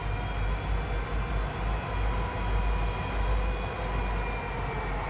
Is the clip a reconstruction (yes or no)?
no